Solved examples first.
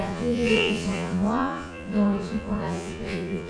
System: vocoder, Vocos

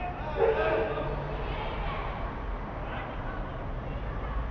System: none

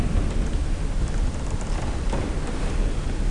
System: none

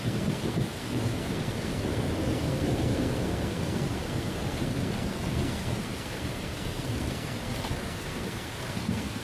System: codec, SNAC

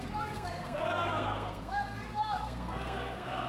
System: codec, SNAC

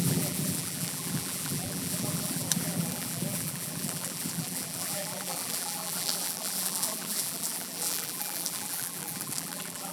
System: vocoder, BigVGAN v2